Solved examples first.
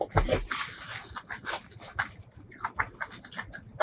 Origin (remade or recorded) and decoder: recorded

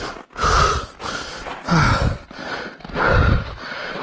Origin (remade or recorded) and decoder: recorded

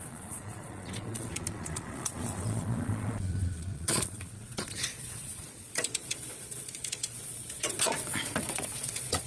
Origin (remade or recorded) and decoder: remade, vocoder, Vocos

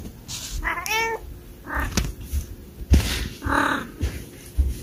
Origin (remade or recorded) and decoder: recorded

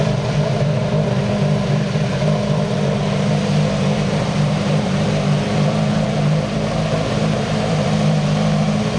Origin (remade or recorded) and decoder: remade, vocoder, BigVGAN v2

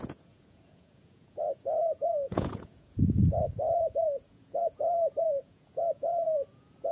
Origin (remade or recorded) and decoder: remade, vocoder, Vocos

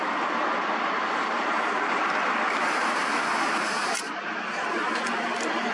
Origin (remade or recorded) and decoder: remade, vocoder, BigVGAN v2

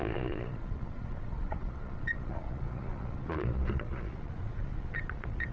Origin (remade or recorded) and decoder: remade, vocoder, Vocos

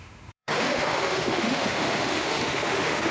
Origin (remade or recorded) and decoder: remade, autoencoder, DAC-VAE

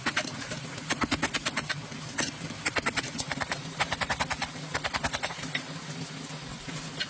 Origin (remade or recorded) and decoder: recorded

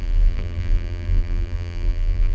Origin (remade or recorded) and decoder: remade, vocoder, BigVGAN v2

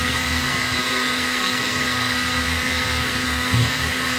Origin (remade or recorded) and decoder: remade, codec, SNAC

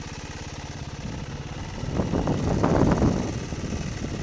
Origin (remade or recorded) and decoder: recorded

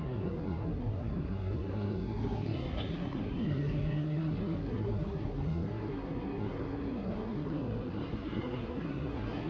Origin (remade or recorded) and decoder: remade, codec, SNAC